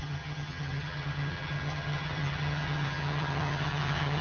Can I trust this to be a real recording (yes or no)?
no